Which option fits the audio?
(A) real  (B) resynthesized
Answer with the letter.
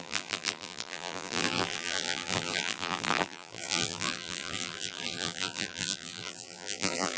B